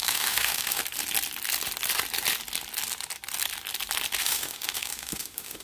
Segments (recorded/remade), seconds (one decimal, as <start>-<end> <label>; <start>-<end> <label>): 0.0-0.8 remade; 0.8-4.2 recorded; 4.2-5.6 remade